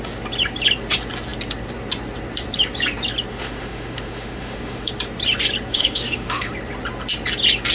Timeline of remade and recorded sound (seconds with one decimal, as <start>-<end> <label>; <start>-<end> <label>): 0.0-3.3 recorded; 3.3-4.9 remade; 4.9-5.7 recorded; 5.7-6.5 remade; 6.5-7.7 recorded